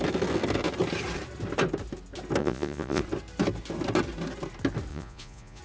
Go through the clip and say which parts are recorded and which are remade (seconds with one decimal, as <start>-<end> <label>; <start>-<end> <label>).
0.0-2.4 recorded; 2.4-3.0 remade; 3.0-4.9 recorded; 4.9-5.6 remade